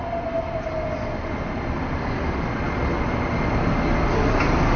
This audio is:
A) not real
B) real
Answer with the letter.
B